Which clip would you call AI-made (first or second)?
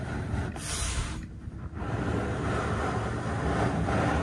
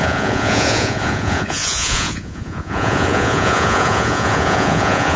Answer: second